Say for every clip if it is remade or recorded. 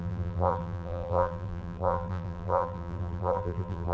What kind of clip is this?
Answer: remade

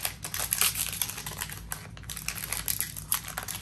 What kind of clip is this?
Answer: recorded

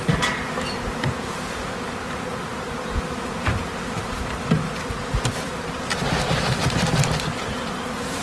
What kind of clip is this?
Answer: remade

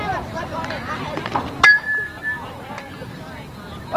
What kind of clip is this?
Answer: recorded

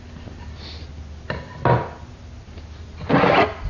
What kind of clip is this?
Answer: recorded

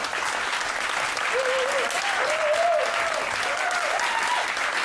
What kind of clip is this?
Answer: recorded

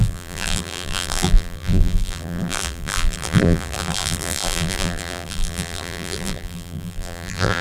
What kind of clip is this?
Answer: remade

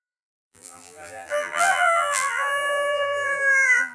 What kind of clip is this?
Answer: remade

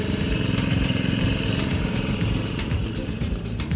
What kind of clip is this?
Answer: remade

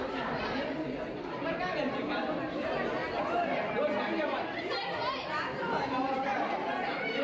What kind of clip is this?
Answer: remade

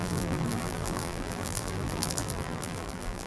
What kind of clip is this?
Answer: remade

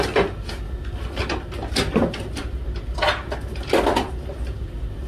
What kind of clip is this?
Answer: recorded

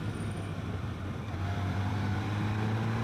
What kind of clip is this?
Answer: remade